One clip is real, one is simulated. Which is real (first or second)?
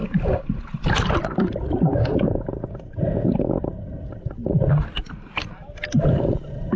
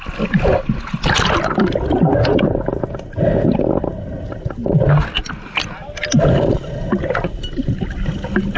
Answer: second